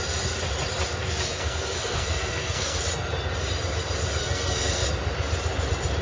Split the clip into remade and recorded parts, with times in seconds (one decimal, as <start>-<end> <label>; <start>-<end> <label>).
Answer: 0.0-1.0 recorded; 1.0-2.8 remade; 2.8-4.2 recorded; 4.2-4.9 remade; 4.9-6.0 recorded